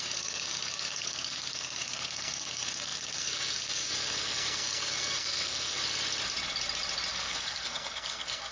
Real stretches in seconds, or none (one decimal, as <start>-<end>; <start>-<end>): 5.8-7.1